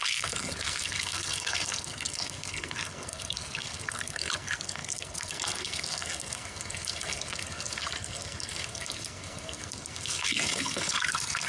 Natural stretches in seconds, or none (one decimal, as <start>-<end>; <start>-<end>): none